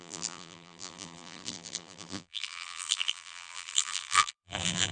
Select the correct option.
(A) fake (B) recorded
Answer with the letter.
A